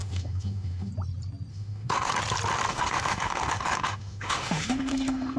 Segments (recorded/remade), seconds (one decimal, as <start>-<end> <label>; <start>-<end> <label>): 0.0-0.9 remade; 0.9-1.5 recorded; 1.5-2.1 remade; 2.1-2.7 recorded; 2.7-5.4 remade